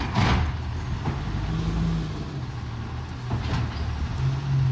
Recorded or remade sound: recorded